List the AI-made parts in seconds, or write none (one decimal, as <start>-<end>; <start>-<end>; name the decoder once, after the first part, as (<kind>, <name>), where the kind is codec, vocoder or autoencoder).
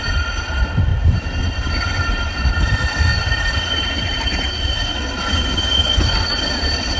none